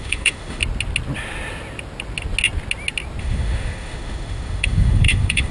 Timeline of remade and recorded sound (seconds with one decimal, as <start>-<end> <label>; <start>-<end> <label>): 0.0-0.6 remade; 0.6-3.2 recorded; 3.2-5.5 remade